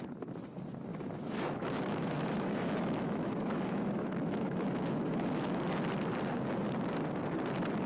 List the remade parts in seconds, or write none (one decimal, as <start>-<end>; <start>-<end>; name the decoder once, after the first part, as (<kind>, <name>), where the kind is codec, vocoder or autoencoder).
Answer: 0.9-5.6 (autoencoder, DAC-VAE)